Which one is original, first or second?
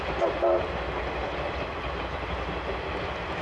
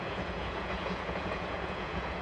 first